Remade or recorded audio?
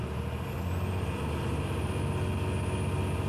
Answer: recorded